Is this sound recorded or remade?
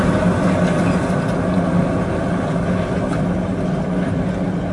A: recorded